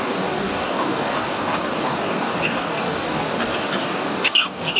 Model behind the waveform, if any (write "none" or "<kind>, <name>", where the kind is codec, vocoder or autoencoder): codec, DAC